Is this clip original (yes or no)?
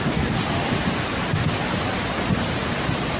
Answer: yes